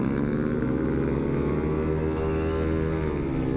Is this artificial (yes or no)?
no